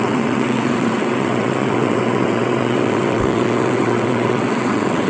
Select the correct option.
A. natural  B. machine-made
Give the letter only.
B